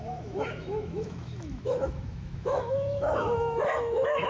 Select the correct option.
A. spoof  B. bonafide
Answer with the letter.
A